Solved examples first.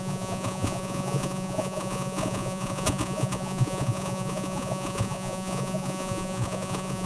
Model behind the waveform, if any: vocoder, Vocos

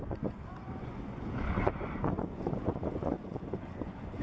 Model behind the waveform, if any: vocoder, Vocos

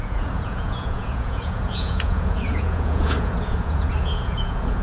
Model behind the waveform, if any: vocoder, Vocos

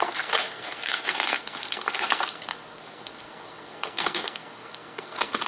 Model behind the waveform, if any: codec, SNAC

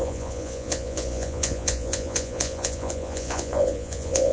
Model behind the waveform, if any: vocoder, Vocos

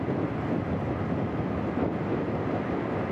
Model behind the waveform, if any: none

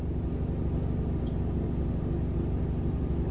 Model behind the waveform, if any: none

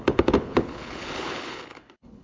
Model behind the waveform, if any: codec, HILCodec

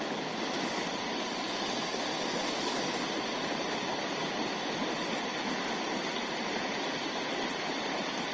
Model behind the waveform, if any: none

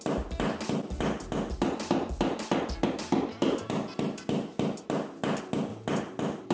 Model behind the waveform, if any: none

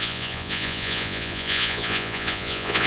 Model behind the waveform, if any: vocoder, Vocos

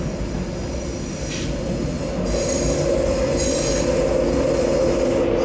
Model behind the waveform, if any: none